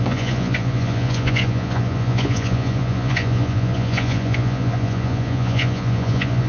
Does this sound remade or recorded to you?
remade